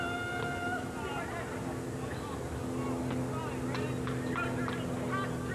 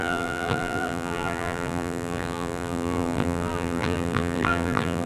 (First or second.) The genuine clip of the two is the first